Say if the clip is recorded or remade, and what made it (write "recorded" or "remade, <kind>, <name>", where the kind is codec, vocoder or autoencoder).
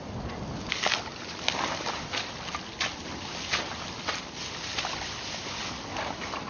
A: recorded